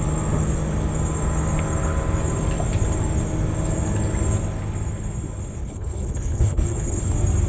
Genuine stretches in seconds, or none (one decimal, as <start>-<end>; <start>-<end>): 0.0-5.6; 7.1-7.5